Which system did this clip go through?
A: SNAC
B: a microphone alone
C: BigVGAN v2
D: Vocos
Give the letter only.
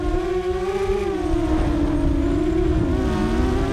B